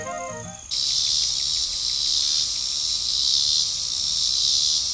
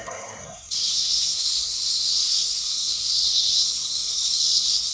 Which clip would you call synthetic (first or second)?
second